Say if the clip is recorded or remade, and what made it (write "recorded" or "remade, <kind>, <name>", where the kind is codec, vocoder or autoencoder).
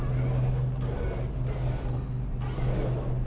recorded